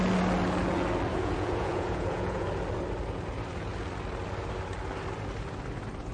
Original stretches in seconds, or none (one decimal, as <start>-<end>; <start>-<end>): 0.0-1.1; 2.5-6.1